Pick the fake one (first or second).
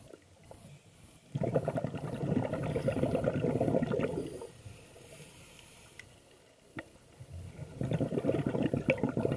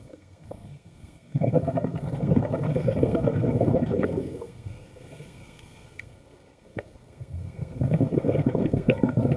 second